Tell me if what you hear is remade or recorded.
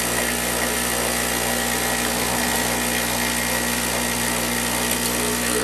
recorded